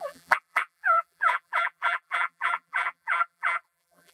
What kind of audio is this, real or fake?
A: fake